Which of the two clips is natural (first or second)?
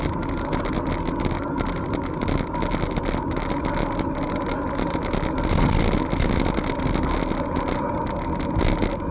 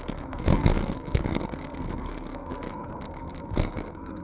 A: first